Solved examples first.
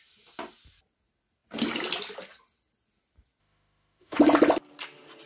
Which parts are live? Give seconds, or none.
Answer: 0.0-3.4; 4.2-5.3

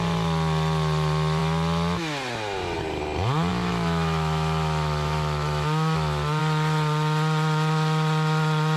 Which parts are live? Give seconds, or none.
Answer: 0.0-3.5; 6.4-8.8